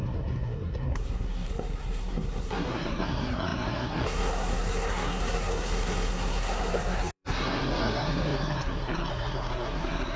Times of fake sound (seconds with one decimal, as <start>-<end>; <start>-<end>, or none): 0.0-10.2